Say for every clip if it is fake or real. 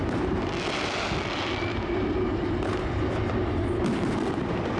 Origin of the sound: real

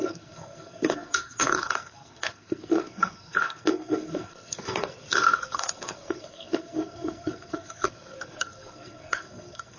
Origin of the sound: fake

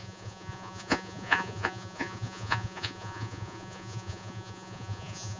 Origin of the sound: fake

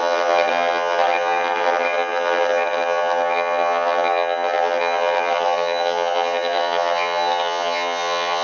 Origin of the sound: fake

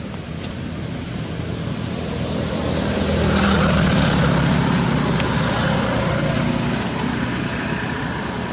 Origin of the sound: fake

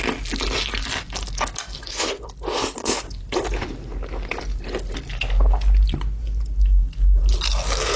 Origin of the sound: real